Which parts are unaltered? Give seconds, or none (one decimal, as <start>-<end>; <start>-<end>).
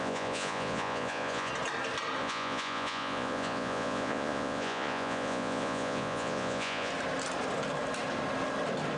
1.5-2.2; 6.9-9.0